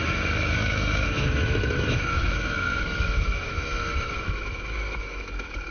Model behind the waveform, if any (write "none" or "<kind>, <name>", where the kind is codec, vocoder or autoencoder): autoencoder, DAC-VAE